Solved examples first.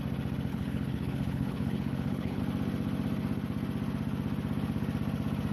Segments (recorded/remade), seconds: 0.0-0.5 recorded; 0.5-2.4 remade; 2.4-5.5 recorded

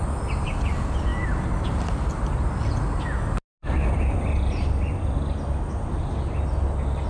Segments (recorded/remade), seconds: 0.0-7.1 recorded

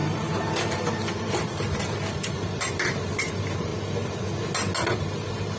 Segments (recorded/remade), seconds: 0.0-3.7 remade; 3.7-5.0 recorded; 5.0-5.6 remade

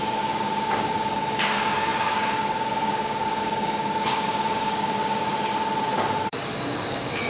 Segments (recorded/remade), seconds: 0.0-5.3 remade; 5.3-6.2 recorded; 6.2-7.3 remade

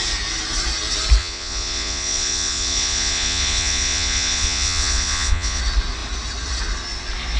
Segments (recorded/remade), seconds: 0.0-1.2 recorded; 1.2-5.6 remade; 5.6-7.4 recorded

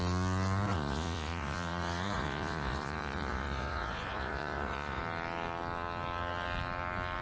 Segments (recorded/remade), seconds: 0.0-0.7 recorded; 0.7-5.0 remade; 5.0-7.2 recorded

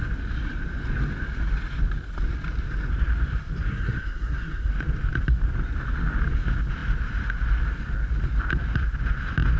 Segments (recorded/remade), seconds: 0.0-3.7 recorded; 3.7-4.7 remade; 4.7-9.6 recorded

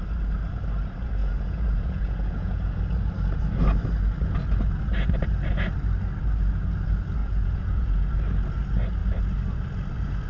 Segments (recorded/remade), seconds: 0.0-1.2 recorded; 1.2-2.8 remade; 2.8-7.2 recorded; 7.2-8.1 remade; 8.1-10.3 recorded